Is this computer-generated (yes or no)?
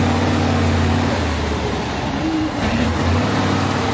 yes